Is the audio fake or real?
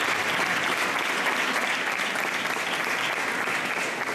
real